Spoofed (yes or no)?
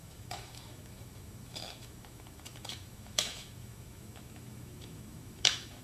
yes